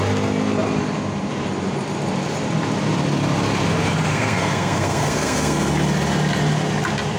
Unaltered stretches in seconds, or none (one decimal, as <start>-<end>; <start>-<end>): 0.0-4.1; 5.7-7.2